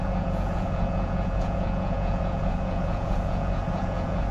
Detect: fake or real fake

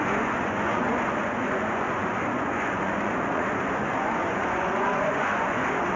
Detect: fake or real fake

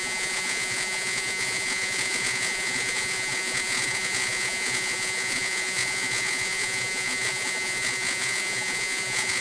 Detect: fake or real fake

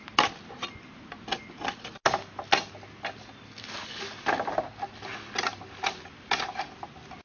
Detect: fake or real real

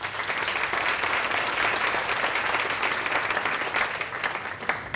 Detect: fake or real real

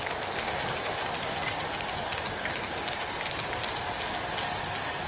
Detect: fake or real real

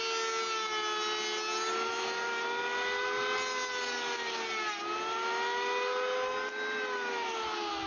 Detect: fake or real real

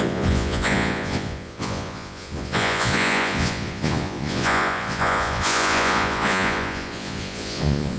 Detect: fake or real fake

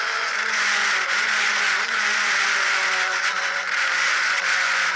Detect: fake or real fake